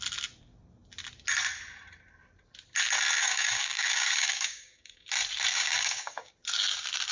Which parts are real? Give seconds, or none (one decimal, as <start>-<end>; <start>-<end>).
0.0-3.2; 5.1-5.5; 6.3-7.1